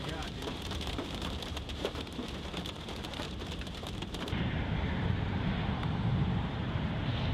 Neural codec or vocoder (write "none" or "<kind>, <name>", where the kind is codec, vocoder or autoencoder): vocoder, BigVGAN v2